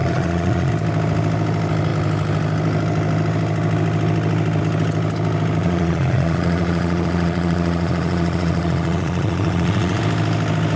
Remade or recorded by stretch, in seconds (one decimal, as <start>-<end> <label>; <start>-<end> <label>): 0.0-0.7 remade; 0.7-5.6 recorded; 5.6-10.0 remade; 10.0-10.8 recorded